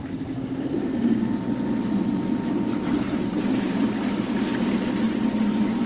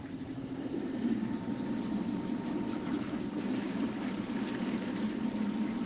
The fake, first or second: second